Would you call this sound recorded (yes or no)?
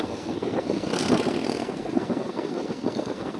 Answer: no